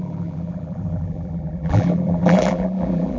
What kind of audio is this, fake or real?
fake